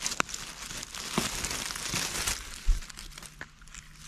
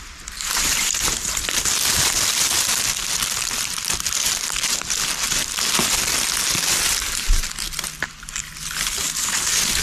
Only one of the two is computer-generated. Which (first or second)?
second